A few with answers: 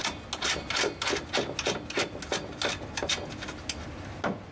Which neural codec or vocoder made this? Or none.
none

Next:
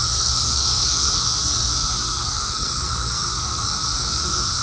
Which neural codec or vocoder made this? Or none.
codec, SNAC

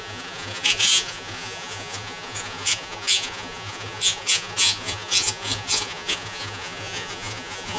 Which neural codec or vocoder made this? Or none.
vocoder, Vocos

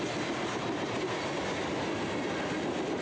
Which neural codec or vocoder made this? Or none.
none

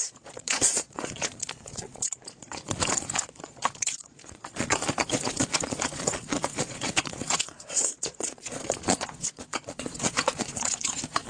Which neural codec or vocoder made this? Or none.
vocoder, Vocos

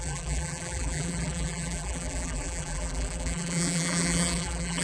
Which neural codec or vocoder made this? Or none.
vocoder, BigVGAN v2